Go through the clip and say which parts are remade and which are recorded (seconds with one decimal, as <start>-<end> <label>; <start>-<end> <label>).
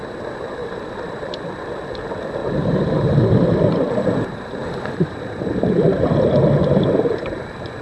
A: 0.0-0.6 recorded; 0.6-1.8 remade; 1.8-2.4 recorded; 2.4-7.1 remade; 7.1-7.8 recorded